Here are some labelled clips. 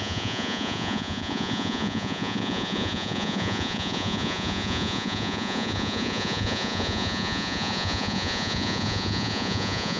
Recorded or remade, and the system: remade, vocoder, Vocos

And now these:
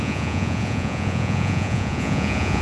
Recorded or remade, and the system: remade, vocoder, Vocos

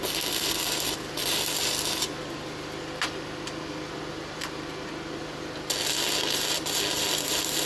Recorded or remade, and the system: recorded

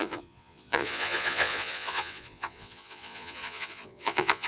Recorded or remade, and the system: remade, vocoder, Vocos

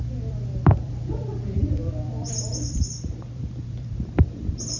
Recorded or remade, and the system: remade, vocoder, BigVGAN v2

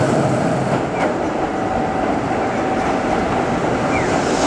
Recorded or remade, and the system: recorded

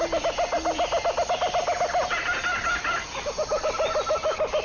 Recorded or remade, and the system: recorded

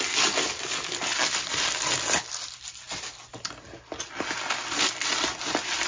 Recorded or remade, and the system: recorded